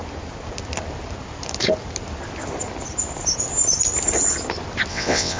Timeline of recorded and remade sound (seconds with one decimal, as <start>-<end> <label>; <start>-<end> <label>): 0.0-4.9 recorded; 4.9-5.4 remade